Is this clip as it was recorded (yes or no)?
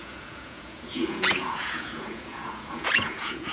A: no